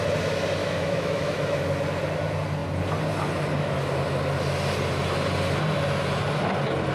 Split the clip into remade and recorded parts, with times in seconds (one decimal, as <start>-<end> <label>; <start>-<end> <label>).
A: 0.0-0.6 recorded; 0.6-1.6 remade; 1.6-6.9 recorded